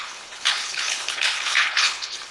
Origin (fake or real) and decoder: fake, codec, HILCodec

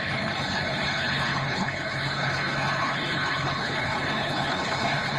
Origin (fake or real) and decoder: fake, codec, HILCodec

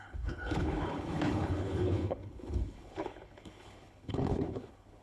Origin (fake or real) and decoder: fake, codec, HILCodec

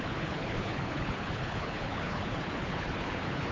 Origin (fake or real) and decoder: fake, codec, HILCodec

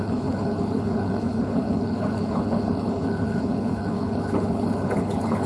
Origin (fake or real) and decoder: fake, codec, HILCodec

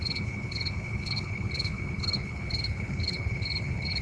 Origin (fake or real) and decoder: fake, codec, HILCodec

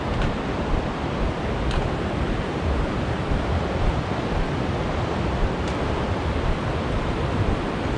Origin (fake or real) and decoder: real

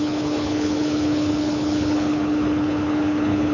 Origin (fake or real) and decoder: fake, codec, HILCodec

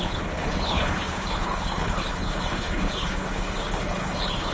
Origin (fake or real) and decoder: fake, codec, HILCodec